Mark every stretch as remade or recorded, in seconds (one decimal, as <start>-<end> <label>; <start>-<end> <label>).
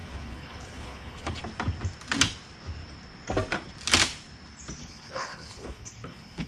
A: 0.0-1.4 remade; 1.4-4.8 recorded; 4.8-6.5 remade